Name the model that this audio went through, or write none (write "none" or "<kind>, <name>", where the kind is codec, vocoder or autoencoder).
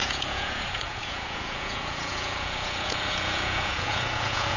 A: vocoder, Vocos